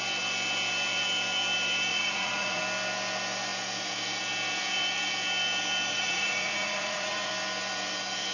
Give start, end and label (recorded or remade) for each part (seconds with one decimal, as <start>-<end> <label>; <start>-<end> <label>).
0.0-1.9 recorded; 1.9-2.6 remade; 2.6-5.9 recorded; 5.9-7.3 remade; 7.3-8.3 recorded